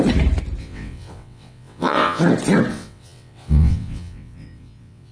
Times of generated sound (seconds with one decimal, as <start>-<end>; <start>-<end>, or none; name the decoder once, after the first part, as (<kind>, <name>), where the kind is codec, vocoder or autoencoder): 0.6-2.2 (vocoder, WaveNeXt); 2.7-5.1